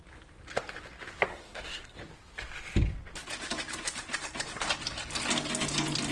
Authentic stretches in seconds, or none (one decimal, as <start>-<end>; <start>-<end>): 0.0-1.3; 2.0-6.1

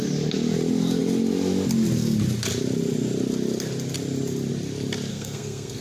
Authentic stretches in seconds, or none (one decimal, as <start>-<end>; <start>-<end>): 0.0-5.1